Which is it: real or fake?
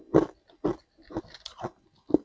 real